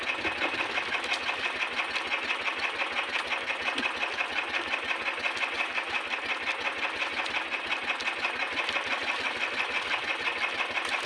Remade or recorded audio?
recorded